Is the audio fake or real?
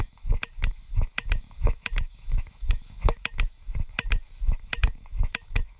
fake